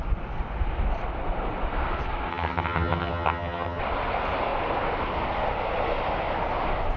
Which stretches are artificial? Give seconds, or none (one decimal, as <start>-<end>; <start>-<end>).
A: 2.3-3.8